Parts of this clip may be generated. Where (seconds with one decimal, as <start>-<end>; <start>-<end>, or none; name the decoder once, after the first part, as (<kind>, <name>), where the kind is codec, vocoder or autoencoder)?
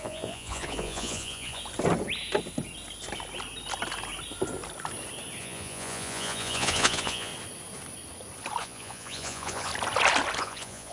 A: 0.0-1.6 (vocoder, Vocos); 5.4-7.3; 8.6-9.7; 10.4-10.9